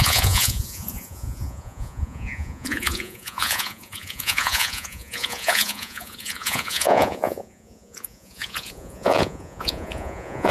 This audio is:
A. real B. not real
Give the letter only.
B